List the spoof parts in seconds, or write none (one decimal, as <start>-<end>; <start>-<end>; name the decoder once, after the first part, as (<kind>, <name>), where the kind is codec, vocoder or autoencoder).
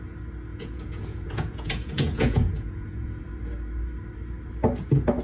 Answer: 0.5-3.2 (vocoder, Vocos)